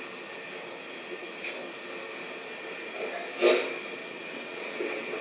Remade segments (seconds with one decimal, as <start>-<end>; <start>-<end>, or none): 4.0-5.2